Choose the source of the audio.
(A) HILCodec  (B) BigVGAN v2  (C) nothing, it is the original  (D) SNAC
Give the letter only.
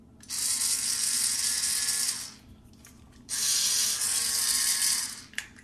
C